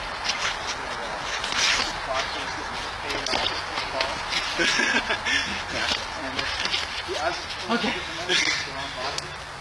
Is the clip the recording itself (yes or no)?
yes